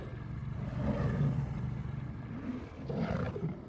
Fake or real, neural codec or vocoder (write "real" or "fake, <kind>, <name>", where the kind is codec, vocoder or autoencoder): real